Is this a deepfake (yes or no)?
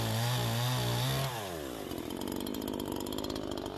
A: no